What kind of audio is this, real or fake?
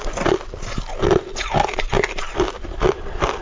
real